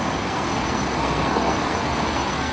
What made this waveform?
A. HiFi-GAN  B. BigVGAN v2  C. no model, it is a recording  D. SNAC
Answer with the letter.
D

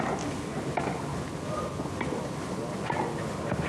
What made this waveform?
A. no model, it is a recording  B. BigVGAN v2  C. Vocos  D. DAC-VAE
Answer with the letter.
A